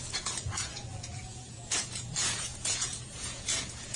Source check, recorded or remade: remade